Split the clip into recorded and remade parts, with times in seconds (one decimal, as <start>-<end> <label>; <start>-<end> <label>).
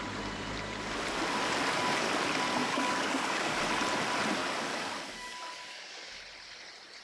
0.0-2.6 recorded; 2.6-3.6 remade; 3.6-4.4 recorded; 4.4-6.2 remade; 6.2-7.0 recorded